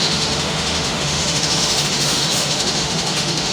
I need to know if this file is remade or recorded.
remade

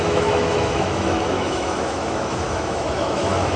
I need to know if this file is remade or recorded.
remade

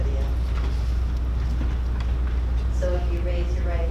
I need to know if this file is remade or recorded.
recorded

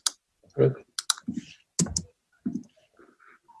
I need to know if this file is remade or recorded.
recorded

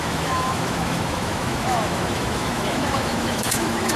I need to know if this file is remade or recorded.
remade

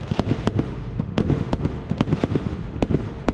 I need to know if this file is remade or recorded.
remade